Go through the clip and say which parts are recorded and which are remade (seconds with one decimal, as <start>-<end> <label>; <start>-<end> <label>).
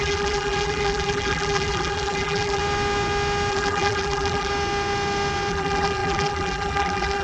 0.0-2.6 remade; 2.6-3.5 recorded; 3.5-4.5 remade; 4.5-5.5 recorded; 5.5-7.2 remade